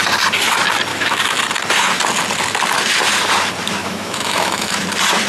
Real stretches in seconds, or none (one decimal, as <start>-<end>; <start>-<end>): 0.0-0.9; 1.4-3.8; 4.8-5.3